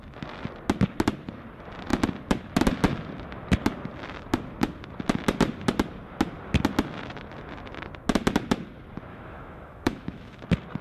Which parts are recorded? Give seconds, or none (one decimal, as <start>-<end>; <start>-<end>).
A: 0.0-9.1; 10.4-10.8